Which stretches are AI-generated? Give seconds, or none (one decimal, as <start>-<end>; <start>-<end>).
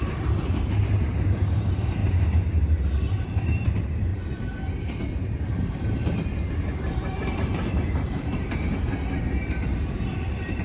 0.0-4.1; 5.1-8.9